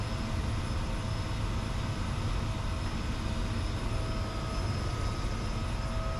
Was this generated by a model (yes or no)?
no